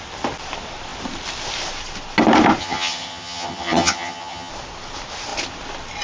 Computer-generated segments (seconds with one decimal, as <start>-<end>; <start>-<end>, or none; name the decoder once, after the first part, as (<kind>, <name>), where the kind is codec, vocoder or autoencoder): 2.6-4.5 (vocoder, HiFi-GAN)